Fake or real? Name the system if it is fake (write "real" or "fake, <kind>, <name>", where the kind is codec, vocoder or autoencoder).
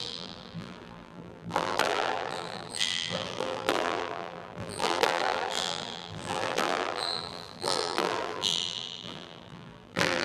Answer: fake, vocoder, BigVGAN v2